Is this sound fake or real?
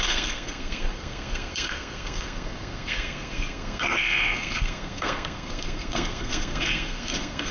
fake